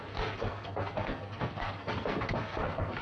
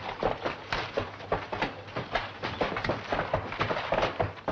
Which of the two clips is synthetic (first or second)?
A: first